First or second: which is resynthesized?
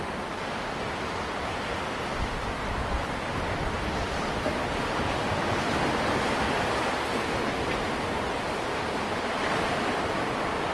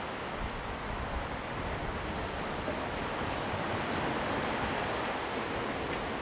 first